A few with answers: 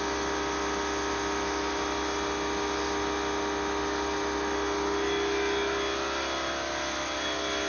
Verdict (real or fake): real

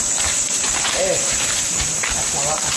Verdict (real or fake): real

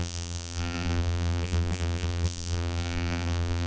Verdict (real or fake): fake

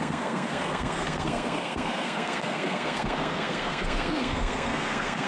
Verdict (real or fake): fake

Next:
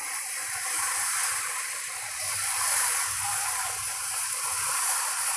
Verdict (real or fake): fake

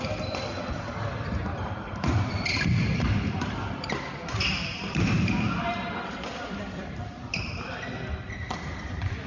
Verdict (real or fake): fake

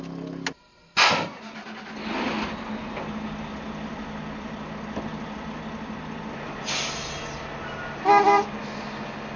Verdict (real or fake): real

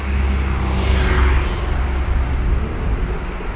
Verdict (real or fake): real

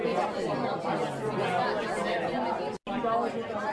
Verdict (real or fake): real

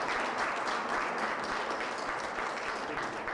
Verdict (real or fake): real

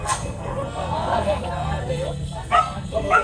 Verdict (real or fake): fake